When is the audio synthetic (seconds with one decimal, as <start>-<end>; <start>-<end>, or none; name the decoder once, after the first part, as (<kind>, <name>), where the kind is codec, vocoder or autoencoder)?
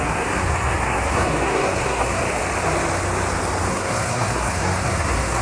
0.0-2.2 (codec, SNAC); 3.7-5.4